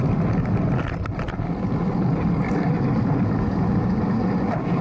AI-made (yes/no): no